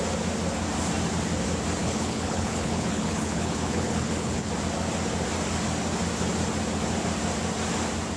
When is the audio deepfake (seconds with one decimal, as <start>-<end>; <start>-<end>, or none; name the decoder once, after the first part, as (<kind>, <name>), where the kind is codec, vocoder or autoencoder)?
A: 1.8-4.5 (codec, HILCodec)